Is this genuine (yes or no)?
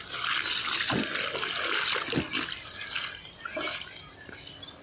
yes